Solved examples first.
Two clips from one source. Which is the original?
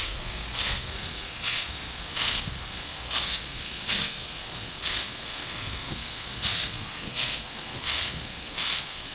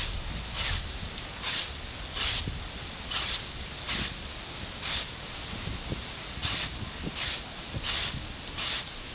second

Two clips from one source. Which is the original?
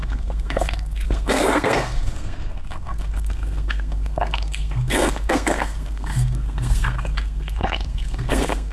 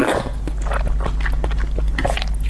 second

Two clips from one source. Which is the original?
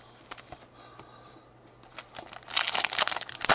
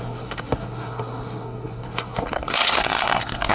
first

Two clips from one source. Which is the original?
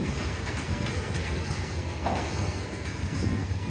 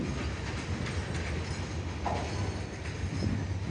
second